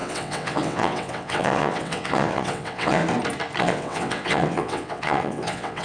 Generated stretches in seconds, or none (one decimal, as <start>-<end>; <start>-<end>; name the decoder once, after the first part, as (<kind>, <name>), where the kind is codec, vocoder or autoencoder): 0.0-3.0 (vocoder, WaveNeXt); 3.6-5.8